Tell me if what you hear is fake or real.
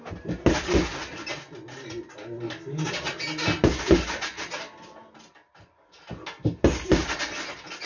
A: real